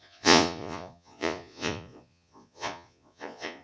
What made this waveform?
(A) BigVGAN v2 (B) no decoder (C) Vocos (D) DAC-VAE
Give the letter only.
C